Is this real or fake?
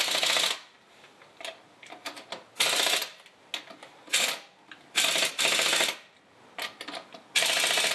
real